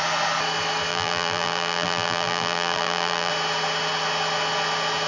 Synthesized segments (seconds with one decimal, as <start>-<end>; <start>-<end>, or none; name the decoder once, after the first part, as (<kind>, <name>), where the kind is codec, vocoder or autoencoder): 0.9-3.3 (vocoder, BigVGAN v2)